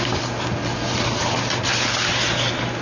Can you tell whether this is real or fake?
real